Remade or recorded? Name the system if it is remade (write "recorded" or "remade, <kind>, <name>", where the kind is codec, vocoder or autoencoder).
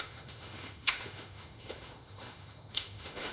remade, autoencoder, DAC-VAE